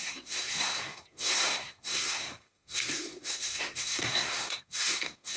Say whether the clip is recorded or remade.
remade